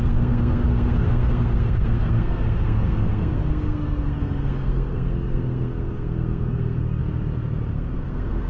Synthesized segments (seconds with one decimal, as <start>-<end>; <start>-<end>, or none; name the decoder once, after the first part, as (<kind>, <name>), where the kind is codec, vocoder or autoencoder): 0.0-7.0 (codec, SNAC); 7.7-8.5